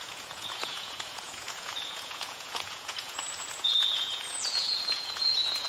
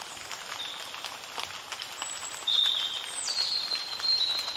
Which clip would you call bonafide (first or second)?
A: second